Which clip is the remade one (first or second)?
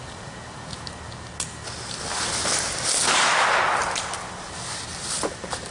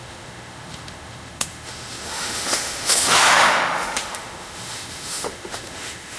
second